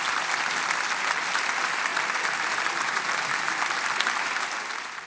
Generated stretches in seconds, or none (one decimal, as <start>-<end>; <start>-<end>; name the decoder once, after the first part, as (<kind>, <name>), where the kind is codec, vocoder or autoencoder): none